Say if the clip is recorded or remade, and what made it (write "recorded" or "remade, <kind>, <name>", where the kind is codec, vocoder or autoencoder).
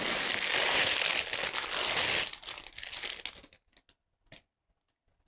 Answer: recorded